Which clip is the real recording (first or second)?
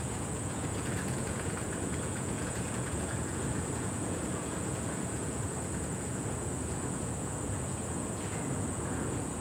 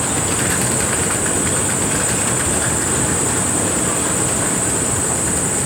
second